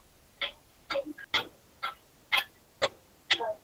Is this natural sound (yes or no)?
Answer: yes